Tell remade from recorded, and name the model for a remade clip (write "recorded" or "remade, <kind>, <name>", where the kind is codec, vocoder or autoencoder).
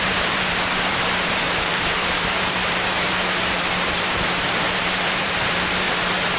remade, vocoder, BigVGAN v2